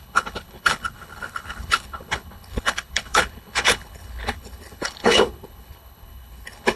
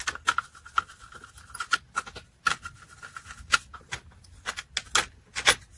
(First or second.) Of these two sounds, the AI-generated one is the first